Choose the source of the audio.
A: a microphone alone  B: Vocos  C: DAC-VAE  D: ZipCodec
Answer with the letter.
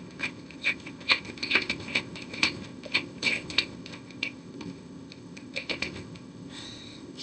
D